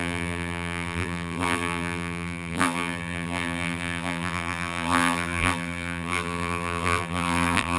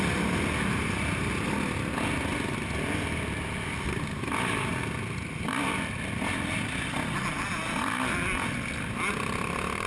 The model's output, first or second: first